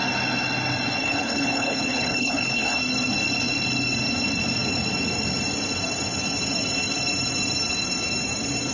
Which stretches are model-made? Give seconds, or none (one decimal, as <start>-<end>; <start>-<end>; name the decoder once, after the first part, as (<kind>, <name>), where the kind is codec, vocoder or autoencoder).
1.0-2.8 (codec, HILCodec)